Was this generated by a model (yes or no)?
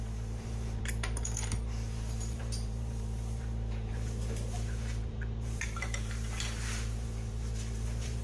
yes